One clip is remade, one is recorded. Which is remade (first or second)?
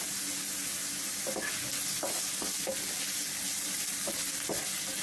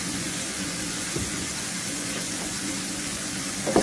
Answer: second